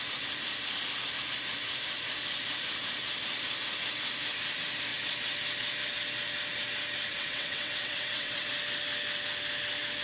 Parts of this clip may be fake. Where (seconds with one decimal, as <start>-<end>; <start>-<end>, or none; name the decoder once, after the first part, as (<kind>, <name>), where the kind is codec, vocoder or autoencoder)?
7.1-8.5 (vocoder, WaveNeXt)